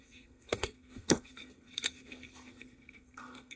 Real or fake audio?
fake